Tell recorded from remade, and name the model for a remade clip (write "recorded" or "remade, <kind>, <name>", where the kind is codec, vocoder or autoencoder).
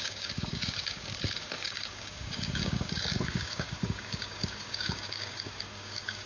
remade, codec, DAC